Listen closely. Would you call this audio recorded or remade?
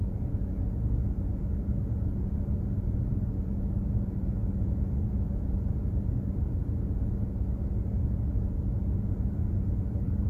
remade